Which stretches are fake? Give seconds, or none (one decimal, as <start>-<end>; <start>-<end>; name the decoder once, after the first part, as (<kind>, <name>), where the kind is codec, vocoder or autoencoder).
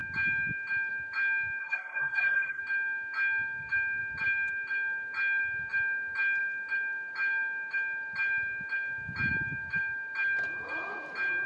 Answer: 1.6-2.6 (codec, SNAC)